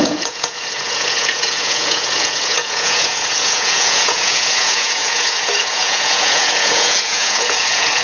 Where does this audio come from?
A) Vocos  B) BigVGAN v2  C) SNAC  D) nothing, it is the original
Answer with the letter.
A